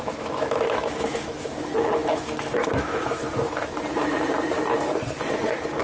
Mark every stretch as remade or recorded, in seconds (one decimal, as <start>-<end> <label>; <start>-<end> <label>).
0.0-3.2 remade; 3.2-5.8 recorded

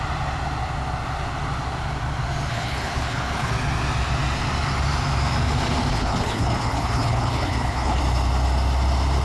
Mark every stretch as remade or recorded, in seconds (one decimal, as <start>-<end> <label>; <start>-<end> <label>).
0.0-2.5 recorded; 2.5-3.5 remade; 3.5-5.9 recorded; 5.9-8.0 remade; 8.0-9.2 recorded

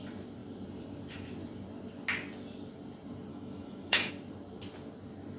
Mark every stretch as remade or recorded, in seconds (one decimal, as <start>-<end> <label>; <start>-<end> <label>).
0.0-3.3 recorded; 3.3-4.1 remade; 4.1-5.4 recorded

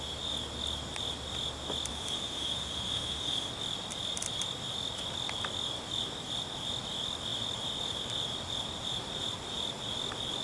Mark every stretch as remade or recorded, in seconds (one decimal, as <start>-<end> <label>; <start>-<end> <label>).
0.0-1.9 recorded; 1.9-3.5 remade; 3.5-10.4 recorded